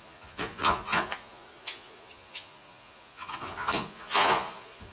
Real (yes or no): no